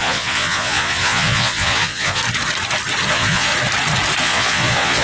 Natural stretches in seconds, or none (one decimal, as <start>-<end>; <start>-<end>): 2.2-3.1; 3.5-4.2